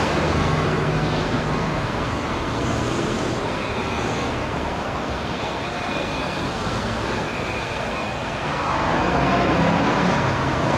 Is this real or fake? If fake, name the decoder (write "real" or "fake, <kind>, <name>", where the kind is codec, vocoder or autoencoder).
fake, codec, SNAC